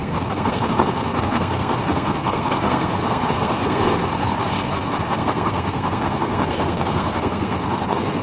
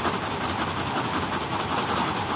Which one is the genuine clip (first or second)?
second